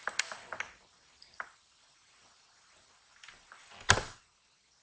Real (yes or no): no